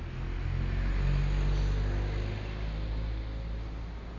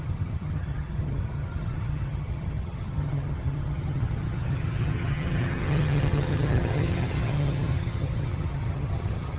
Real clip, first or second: first